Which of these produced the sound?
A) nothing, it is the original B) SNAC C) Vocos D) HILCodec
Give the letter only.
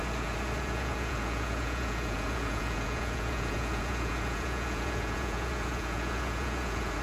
C